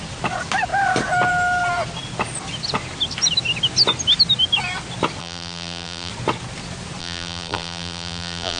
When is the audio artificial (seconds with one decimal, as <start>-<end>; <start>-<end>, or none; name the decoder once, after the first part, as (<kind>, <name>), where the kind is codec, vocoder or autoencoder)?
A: 5.2-6.1 (vocoder, BigVGAN v2); 7.0-8.6